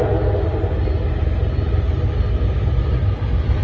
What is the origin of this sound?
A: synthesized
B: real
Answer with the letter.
B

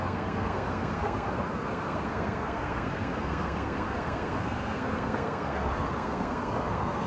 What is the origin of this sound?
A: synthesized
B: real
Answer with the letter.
A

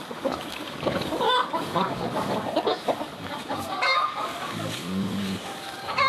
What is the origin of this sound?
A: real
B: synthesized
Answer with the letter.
B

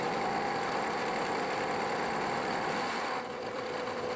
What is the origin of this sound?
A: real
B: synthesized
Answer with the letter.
B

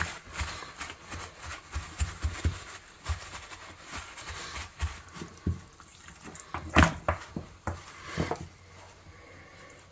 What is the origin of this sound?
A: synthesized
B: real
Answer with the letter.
B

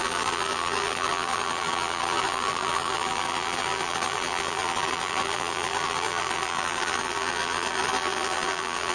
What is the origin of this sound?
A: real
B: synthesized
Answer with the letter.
B